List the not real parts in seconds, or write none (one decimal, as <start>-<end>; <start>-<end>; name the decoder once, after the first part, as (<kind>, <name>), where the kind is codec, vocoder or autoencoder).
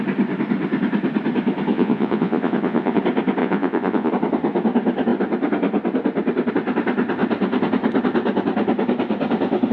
1.7-3.0 (vocoder, Vocos); 3.4-4.1